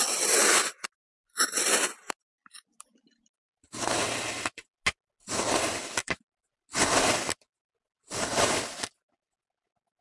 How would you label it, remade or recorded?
recorded